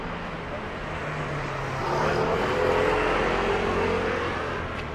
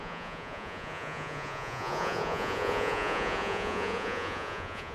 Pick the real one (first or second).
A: first